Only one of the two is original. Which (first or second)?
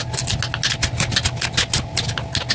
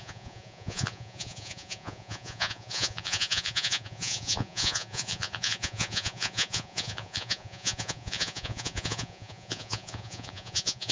first